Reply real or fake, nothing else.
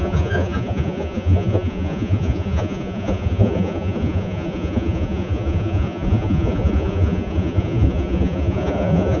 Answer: fake